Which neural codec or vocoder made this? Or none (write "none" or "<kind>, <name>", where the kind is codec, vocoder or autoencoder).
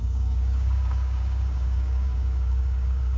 codec, DAC